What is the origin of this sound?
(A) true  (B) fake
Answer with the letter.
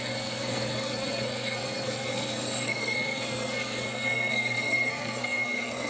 B